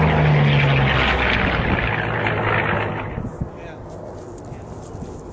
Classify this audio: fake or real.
real